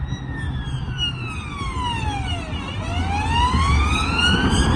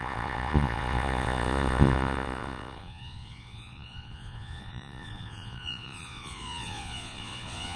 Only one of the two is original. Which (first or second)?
first